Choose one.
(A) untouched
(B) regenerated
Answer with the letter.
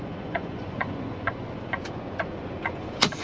B